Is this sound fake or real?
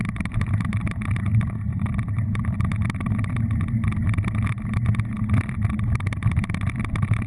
real